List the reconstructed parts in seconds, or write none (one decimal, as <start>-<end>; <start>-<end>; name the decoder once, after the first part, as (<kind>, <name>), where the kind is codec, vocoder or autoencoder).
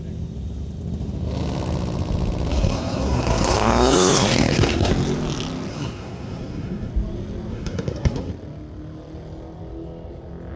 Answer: 2.5-4.9 (codec, SNAC); 5.7-6.9; 7.5-8.3